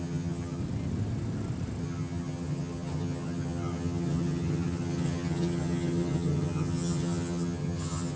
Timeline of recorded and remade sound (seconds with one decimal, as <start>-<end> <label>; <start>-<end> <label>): 0.0-0.6 remade; 0.6-1.8 recorded; 1.8-8.2 remade